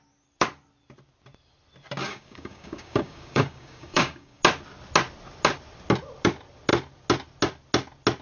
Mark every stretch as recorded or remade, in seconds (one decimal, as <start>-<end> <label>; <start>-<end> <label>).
0.0-2.0 recorded; 2.0-4.4 remade; 4.4-8.2 recorded